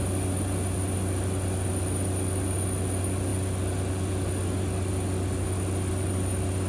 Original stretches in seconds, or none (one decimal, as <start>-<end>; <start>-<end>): 0.0-6.7